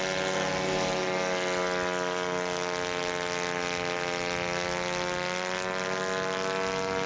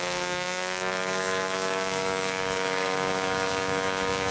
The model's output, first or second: second